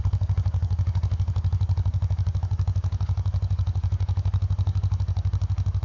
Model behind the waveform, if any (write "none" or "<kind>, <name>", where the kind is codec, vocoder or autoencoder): codec, DAC